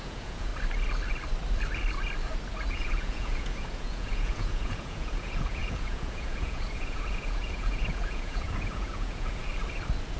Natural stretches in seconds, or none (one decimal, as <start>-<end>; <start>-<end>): 0.5-2.7; 9.4-10.2